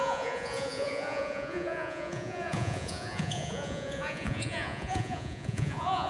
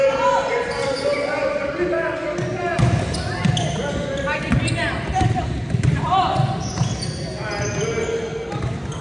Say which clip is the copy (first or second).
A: first